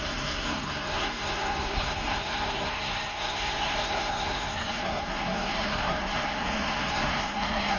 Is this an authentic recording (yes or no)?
no